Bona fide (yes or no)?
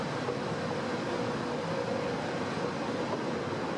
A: no